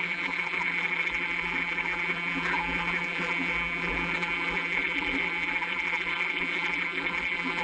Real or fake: fake